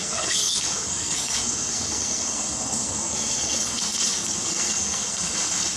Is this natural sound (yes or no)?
no